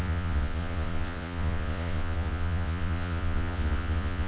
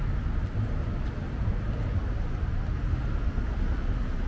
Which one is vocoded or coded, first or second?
first